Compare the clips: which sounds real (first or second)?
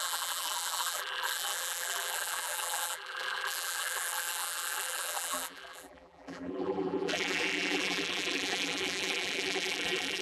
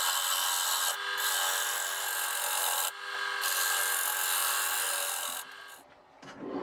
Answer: second